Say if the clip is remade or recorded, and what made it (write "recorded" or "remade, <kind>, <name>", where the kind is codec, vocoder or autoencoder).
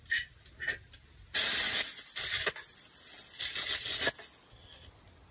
recorded